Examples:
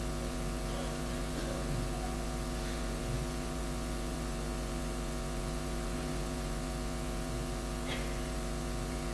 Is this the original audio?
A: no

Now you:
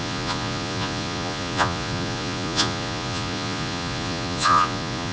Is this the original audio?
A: no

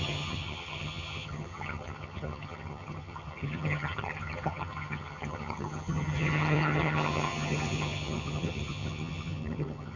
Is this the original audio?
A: no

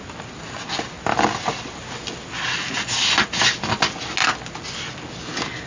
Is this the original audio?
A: yes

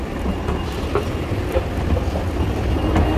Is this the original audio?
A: yes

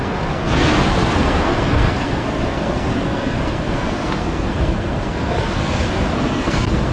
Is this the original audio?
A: no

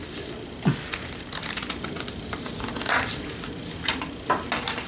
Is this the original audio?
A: yes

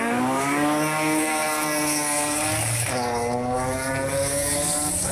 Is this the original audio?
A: no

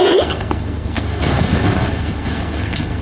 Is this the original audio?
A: no